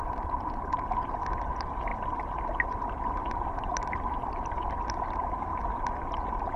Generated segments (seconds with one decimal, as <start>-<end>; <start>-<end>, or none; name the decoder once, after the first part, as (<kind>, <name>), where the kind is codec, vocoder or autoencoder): 1.9-4.1 (vocoder, BigVGAN v2); 5.5-6.6